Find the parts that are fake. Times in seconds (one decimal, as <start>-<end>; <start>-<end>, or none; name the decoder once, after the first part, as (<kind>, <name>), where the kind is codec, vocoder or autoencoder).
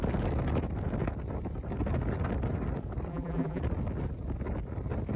3.1-3.6 (vocoder, BigVGAN v2)